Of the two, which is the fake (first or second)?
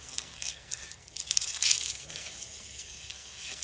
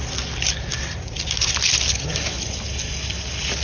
first